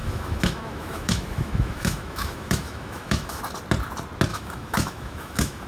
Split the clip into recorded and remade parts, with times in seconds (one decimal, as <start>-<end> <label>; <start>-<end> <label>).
0.0-3.4 remade; 3.4-4.3 recorded; 4.3-5.7 remade